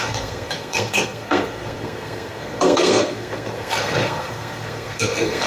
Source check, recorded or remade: remade